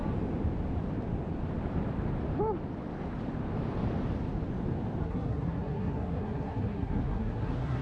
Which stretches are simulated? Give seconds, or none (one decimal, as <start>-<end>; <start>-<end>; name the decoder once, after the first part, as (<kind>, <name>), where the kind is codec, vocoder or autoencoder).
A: 5.0-7.8 (codec, SNAC)